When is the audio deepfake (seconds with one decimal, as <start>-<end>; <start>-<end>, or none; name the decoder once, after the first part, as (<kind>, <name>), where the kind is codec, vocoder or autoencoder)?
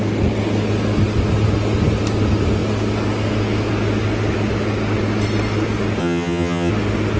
6.0-6.7 (vocoder, HiFi-GAN)